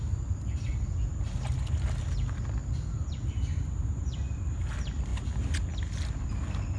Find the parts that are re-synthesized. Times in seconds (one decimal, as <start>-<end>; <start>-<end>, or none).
none